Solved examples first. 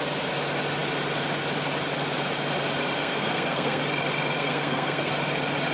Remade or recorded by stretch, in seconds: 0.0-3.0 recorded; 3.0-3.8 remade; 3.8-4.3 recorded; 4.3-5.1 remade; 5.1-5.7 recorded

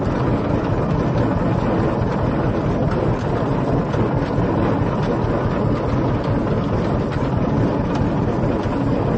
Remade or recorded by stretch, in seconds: 0.0-9.2 recorded

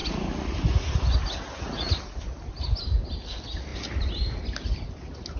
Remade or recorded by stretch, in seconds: 0.0-5.4 recorded

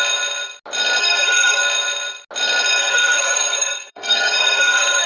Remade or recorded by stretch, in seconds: 0.0-1.0 recorded; 1.0-1.6 remade; 1.6-2.8 recorded; 2.8-5.1 remade

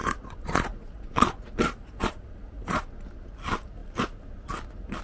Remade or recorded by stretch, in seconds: 0.0-2.9 remade; 2.9-5.0 recorded

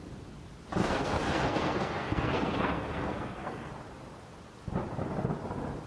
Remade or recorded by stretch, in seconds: 0.0-0.8 recorded; 0.8-3.7 remade; 3.7-5.9 recorded

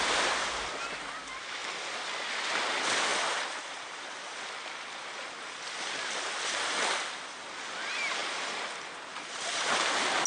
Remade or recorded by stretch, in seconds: 0.0-3.1 recorded; 3.1-7.5 remade; 7.5-8.2 recorded; 8.2-9.8 remade; 9.8-10.3 recorded

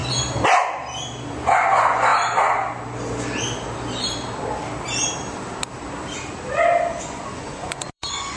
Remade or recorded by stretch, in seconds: 0.0-1.3 recorded; 1.3-2.1 remade; 2.1-7.0 recorded; 7.0-8.4 remade